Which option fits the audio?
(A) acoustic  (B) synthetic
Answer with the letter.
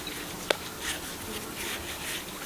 A